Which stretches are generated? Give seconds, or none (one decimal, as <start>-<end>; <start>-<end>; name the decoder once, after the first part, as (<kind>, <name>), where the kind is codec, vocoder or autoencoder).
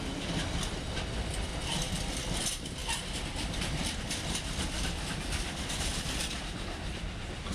0.0-1.5 (vocoder, BigVGAN v2); 2.4-2.8; 3.4-7.5